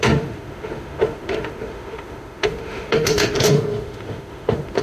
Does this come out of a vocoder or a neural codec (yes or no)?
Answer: yes